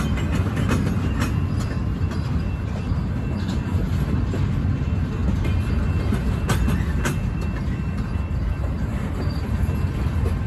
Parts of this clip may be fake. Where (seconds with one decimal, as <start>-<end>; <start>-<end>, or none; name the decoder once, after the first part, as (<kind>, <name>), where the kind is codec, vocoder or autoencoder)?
none